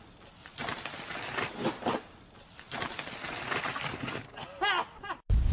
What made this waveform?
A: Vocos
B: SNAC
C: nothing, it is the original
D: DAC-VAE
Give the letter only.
C